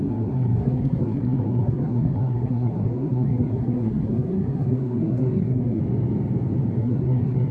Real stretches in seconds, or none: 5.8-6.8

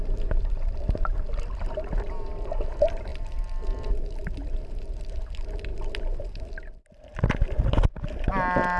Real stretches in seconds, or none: 0.0-8.8

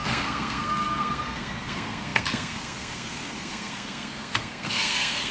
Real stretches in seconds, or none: none

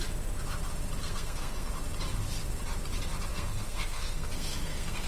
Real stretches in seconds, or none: 0.0-1.0; 1.7-3.3

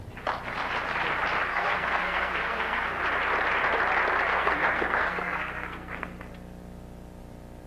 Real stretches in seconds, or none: 0.0-1.5; 3.0-4.3; 6.3-7.7

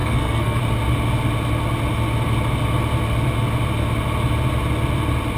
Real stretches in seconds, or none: 0.6-5.4

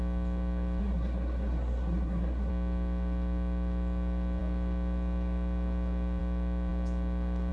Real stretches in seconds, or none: 0.0-0.8; 2.5-7.5